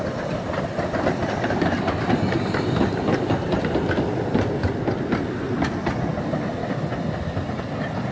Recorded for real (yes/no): yes